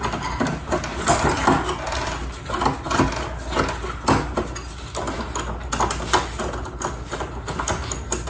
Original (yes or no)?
yes